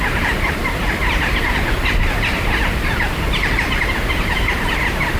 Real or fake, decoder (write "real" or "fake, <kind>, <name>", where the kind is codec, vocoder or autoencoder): fake, vocoder, BigVGAN v2